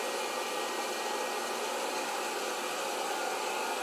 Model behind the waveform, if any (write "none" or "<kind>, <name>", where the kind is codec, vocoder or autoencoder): none